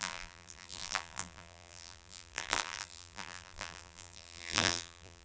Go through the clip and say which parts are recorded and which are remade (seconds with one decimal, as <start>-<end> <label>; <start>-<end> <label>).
0.0-5.2 remade